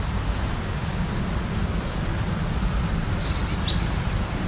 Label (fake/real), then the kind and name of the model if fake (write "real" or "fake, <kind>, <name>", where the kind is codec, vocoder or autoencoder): real